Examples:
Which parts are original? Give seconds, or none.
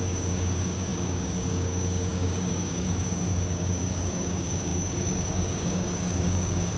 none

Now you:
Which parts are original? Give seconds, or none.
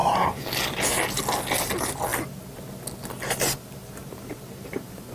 0.0-4.0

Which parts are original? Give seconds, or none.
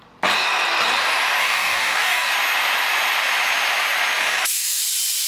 0.0-1.4; 2.3-4.2; 4.8-5.3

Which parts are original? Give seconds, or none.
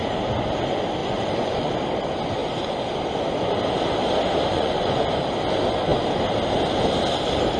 0.0-1.0; 1.7-4.5; 5.1-7.6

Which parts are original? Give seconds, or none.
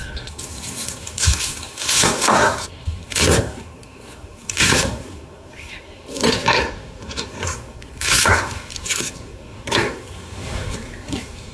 none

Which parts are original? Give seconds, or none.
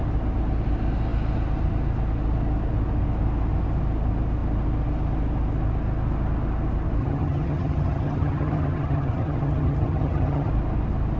0.0-7.0; 10.5-11.2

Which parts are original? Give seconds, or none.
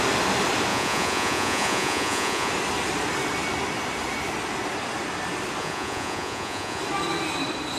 0.0-0.7; 2.5-5.6; 6.8-7.8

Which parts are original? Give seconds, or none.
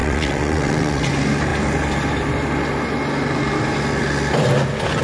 1.1-5.0